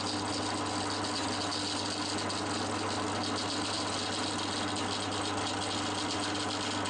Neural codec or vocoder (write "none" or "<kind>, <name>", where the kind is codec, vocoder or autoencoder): none